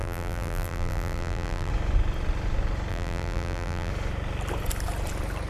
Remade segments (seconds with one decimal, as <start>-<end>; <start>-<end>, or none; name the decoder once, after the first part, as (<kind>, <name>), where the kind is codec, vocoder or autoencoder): 0.0-1.7 (vocoder, BigVGAN v2); 2.9-3.9